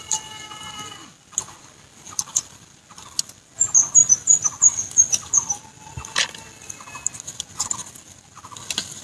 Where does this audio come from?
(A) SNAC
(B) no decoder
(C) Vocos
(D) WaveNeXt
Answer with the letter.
B